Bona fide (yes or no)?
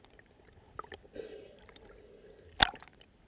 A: yes